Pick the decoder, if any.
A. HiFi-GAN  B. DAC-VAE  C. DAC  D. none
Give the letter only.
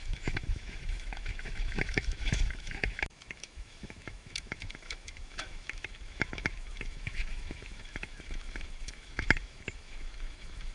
B